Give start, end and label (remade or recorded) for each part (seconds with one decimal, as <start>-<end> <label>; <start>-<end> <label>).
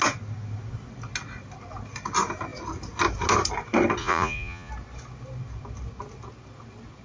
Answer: 0.0-4.0 recorded; 4.0-4.7 remade; 4.7-7.0 recorded